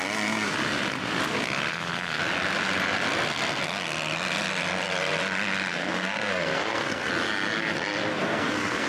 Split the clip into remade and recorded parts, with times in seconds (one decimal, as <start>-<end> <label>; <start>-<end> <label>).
0.0-1.7 recorded; 1.7-2.2 remade; 2.2-5.7 recorded; 5.7-7.1 remade; 7.1-8.1 recorded; 8.1-8.9 remade